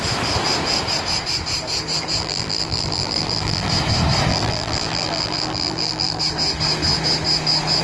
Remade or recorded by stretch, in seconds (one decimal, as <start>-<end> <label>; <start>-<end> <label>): 0.0-2.2 recorded; 2.2-3.7 remade; 3.7-4.3 recorded; 4.3-6.2 remade; 6.2-7.8 recorded